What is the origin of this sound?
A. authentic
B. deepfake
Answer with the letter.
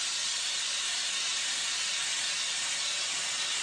A